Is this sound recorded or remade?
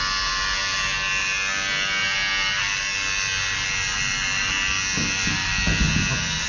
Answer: recorded